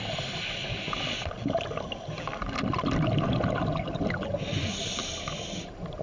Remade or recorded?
recorded